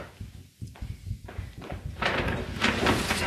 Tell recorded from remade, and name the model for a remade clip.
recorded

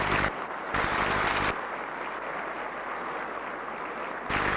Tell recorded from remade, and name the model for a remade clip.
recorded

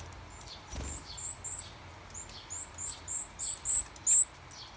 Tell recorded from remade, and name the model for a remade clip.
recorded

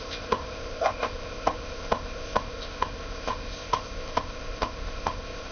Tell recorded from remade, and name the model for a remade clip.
remade, codec, ZipCodec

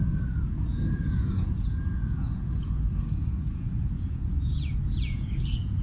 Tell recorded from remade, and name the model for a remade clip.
remade, vocoder, Vocos